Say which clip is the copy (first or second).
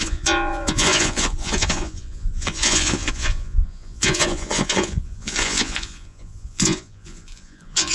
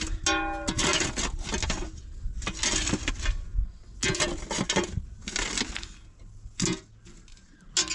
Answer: first